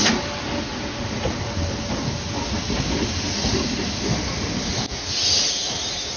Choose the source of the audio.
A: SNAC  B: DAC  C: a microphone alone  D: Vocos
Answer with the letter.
C